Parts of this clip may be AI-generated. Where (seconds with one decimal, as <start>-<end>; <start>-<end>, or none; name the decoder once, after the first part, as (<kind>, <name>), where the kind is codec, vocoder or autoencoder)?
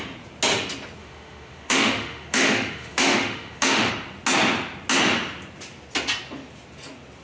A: 1.0-3.9 (autoencoder, DAC-VAE)